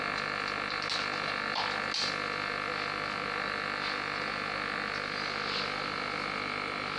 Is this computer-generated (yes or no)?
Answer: no